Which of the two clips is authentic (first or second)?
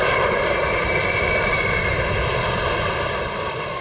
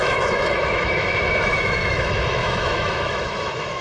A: first